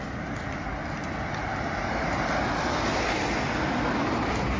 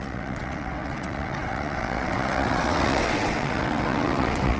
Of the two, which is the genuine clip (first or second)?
first